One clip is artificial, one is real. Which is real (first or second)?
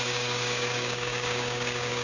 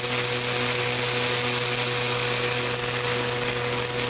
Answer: second